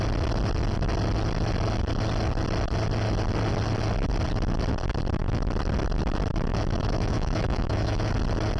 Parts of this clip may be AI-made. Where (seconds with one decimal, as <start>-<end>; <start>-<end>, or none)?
6.5-8.1